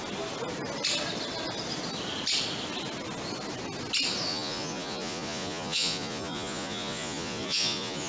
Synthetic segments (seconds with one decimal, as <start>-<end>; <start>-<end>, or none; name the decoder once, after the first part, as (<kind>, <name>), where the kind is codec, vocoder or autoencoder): 4.3-8.1 (vocoder, Vocos)